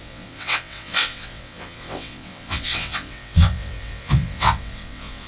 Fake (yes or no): yes